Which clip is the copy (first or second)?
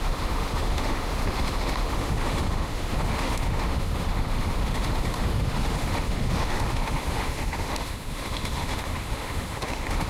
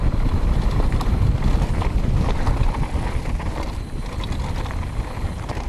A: first